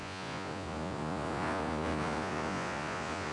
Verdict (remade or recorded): remade